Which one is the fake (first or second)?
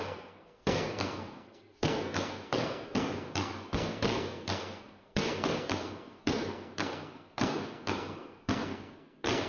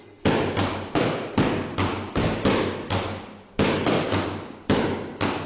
first